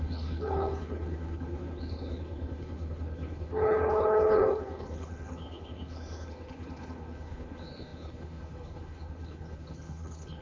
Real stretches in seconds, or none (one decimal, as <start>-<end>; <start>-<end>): none